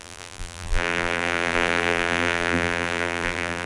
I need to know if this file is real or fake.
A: fake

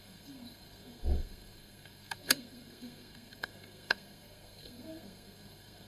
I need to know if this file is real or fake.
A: fake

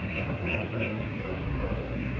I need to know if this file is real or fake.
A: fake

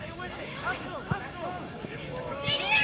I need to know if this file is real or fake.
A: fake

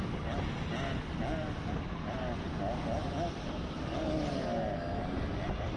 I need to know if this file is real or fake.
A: real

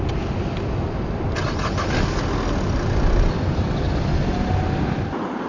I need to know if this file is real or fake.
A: real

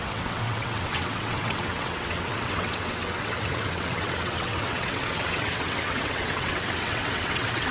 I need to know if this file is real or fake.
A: fake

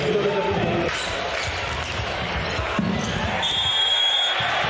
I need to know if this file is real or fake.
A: fake